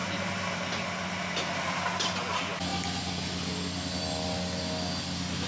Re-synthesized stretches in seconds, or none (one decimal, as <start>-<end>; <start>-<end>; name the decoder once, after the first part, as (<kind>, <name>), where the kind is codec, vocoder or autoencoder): none